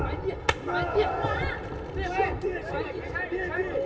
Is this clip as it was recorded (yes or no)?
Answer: yes